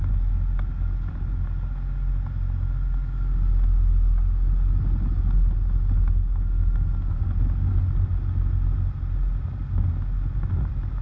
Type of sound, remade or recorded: recorded